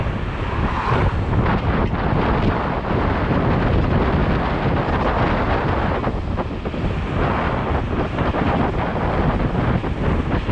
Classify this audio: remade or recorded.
recorded